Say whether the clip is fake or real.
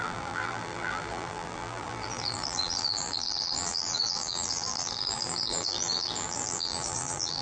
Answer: fake